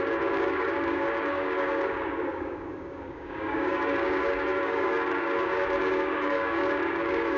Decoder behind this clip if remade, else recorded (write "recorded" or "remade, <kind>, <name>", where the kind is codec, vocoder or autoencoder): remade, codec, DAC